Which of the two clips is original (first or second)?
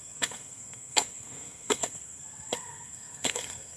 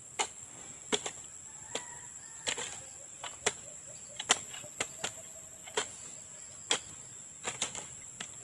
second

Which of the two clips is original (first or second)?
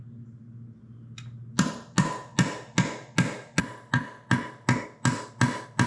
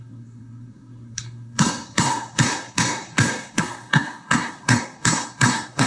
first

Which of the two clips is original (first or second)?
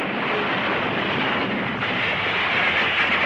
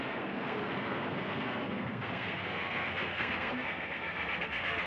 first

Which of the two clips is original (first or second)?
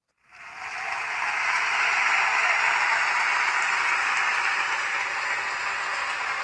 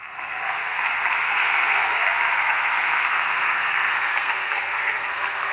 first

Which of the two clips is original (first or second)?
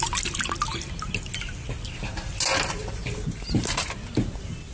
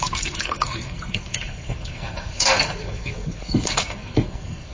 first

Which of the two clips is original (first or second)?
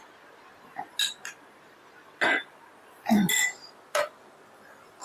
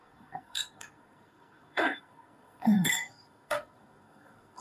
first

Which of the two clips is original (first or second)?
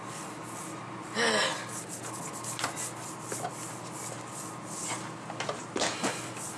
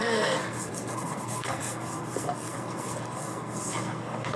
first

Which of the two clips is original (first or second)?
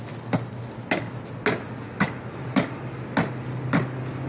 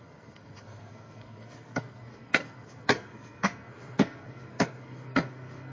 first